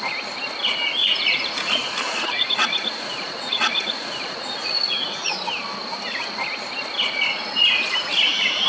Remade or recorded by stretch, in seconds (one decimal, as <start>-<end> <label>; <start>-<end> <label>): 0.0-1.0 recorded; 1.0-5.3 remade; 5.3-8.7 recorded